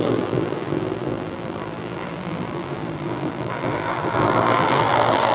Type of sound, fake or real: fake